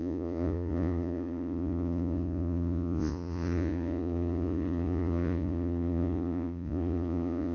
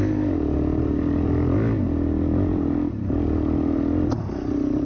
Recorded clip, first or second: second